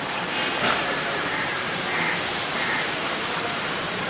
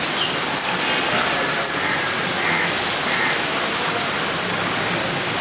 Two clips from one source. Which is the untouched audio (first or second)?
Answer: second